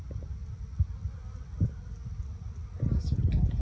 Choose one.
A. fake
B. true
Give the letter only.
B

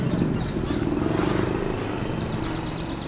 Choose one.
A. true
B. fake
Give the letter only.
A